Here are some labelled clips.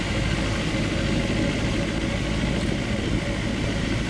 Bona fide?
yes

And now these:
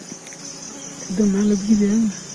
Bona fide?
yes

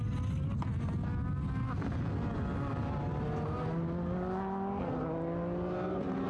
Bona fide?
yes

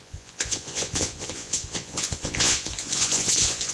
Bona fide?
no